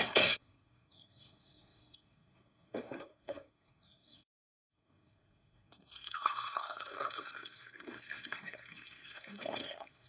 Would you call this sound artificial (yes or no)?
yes